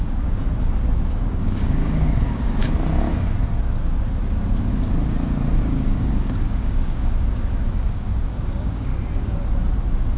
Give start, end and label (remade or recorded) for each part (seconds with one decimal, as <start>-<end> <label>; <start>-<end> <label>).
0.0-0.4 remade; 0.4-1.1 recorded; 1.1-2.6 remade; 2.6-5.6 recorded; 5.6-8.9 remade; 8.9-10.2 recorded